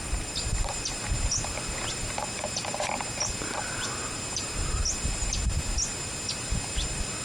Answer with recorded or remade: remade